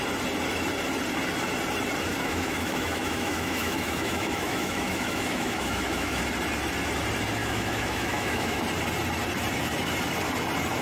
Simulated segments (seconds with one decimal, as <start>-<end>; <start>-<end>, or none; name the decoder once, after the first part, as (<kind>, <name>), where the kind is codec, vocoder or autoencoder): 2.2-6.2 (autoencoder, DAC-VAE); 7.4-8.6